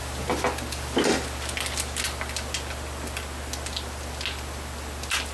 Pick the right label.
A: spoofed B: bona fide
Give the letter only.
B